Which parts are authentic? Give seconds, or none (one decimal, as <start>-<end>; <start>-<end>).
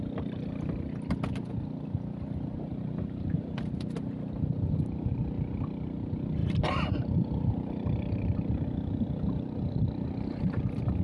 0.0-2.7; 5.1-6.4